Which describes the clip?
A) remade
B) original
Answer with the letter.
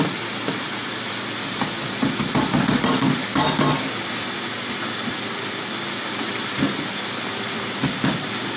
B